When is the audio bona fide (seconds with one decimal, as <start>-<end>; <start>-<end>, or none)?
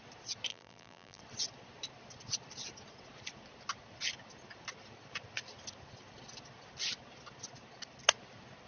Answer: 0.0-0.5; 1.2-8.7